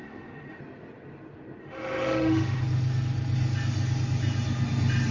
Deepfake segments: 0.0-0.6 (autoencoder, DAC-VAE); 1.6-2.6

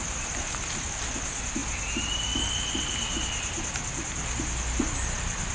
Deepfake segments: none